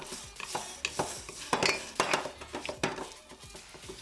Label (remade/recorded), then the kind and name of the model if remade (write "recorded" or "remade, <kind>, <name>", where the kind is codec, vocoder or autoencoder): recorded